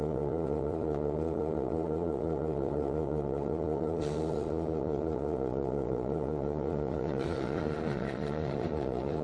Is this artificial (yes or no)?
yes